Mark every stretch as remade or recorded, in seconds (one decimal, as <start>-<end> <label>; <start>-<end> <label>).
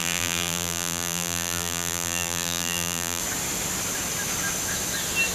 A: 0.0-3.2 remade; 3.2-5.3 recorded